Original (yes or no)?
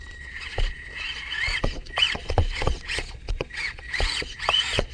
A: no